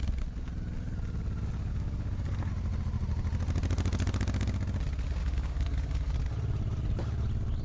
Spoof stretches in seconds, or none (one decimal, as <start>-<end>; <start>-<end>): 1.7-2.5; 5.2-6.1